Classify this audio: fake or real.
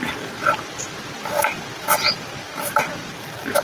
fake